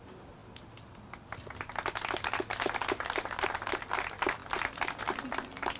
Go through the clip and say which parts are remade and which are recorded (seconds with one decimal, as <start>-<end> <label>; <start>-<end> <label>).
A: 0.0-5.8 recorded